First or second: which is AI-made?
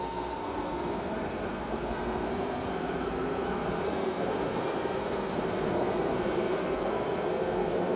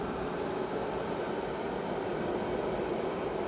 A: first